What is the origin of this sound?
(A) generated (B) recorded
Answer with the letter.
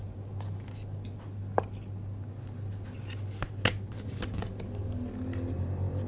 B